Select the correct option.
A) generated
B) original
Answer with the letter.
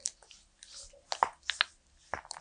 B